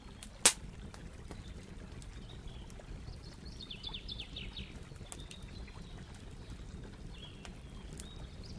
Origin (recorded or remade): recorded